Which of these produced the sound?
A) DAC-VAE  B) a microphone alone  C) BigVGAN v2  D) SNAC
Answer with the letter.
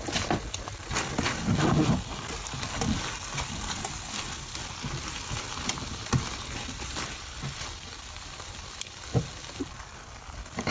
B